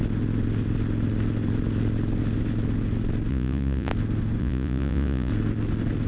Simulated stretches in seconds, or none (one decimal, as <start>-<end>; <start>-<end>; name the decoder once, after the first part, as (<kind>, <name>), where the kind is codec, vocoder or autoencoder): 3.3-3.9 (vocoder, Vocos); 4.4-5.3